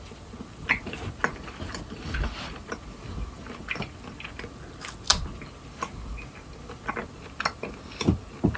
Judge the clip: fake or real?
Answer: real